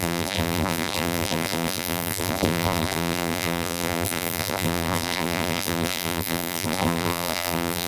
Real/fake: fake